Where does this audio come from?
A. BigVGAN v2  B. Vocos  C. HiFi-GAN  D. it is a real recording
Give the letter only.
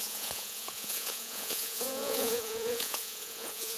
B